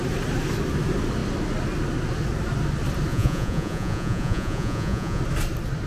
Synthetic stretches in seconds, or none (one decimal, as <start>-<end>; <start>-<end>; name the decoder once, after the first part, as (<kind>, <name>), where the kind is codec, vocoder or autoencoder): 3.1-5.2 (vocoder, Vocos)